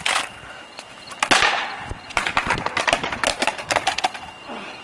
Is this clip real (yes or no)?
yes